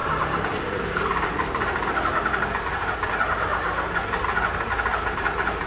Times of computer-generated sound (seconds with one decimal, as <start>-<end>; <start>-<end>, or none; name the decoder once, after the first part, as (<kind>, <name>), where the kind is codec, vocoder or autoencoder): 0.0-3.1 (vocoder, BigVGAN v2)